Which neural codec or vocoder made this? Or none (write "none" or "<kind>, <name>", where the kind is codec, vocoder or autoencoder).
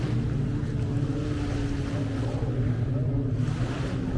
none